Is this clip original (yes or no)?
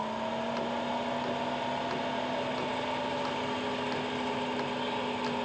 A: yes